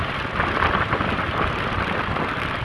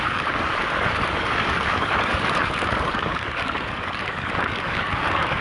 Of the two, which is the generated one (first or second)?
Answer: second